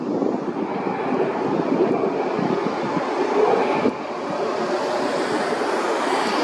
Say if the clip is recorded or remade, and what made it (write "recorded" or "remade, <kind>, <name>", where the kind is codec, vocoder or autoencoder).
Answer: recorded